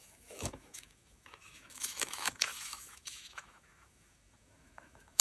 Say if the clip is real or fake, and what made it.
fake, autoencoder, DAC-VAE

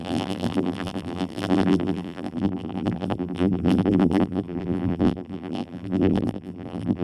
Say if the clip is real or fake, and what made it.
fake, vocoder, BigVGAN v2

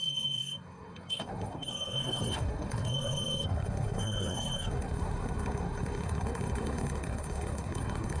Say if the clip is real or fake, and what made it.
fake, codec, SNAC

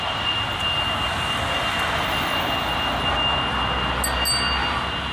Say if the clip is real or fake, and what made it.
real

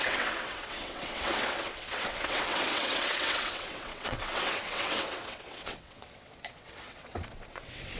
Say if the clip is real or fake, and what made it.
fake, vocoder, WaveNeXt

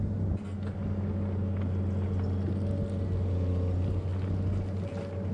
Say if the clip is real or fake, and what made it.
real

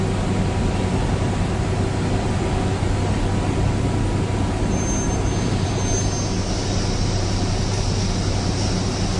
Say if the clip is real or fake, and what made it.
real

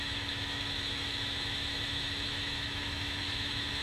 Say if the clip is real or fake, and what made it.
fake, autoencoder, DAC-VAE